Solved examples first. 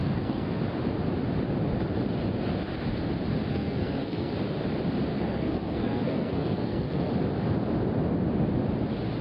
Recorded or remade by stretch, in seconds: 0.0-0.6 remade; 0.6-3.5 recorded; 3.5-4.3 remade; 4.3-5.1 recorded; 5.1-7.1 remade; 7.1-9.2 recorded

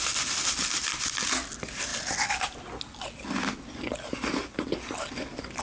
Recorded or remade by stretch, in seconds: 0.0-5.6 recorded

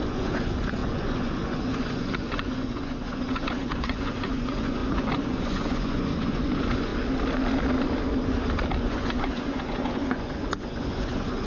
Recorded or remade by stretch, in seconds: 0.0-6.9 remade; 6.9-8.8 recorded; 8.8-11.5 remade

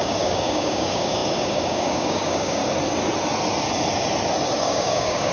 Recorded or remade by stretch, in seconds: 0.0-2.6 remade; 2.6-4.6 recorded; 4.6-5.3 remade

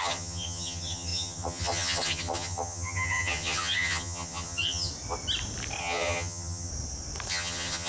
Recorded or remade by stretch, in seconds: 0.0-4.9 remade; 4.9-5.8 recorded; 5.8-6.7 remade; 6.7-7.3 recorded; 7.3-7.9 remade

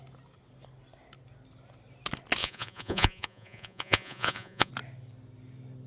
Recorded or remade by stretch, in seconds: 0.0-2.4 recorded; 2.4-4.7 remade; 4.7-5.9 recorded